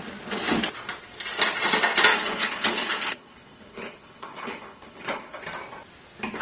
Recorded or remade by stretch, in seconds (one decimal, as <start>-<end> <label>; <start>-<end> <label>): 0.0-2.1 recorded; 2.1-5.4 remade; 5.4-6.4 recorded

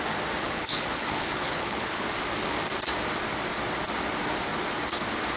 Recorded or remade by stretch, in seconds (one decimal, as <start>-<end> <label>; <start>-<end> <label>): 0.0-0.4 recorded; 0.4-2.0 remade; 2.0-5.4 recorded

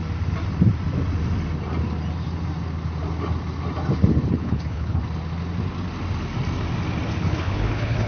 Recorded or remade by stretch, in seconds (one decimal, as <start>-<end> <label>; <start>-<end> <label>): 0.0-4.3 recorded; 4.3-5.0 remade; 5.0-7.2 recorded; 7.2-8.1 remade

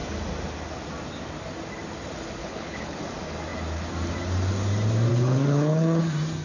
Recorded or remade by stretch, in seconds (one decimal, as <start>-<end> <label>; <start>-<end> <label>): 0.0-2.4 recorded; 2.4-3.0 remade; 3.0-5.1 recorded; 5.1-6.0 remade; 6.0-6.4 recorded

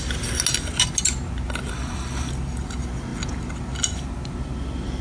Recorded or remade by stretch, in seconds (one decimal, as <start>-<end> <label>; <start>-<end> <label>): 0.0-1.7 recorded; 1.7-2.3 remade; 2.3-5.0 recorded